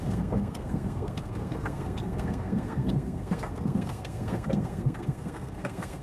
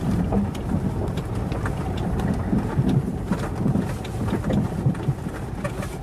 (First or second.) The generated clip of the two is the first